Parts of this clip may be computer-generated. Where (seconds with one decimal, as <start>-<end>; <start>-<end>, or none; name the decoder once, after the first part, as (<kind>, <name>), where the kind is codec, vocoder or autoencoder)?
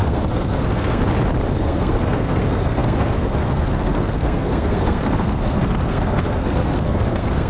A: 0.0-1.0 (codec, SNAC); 1.6-7.5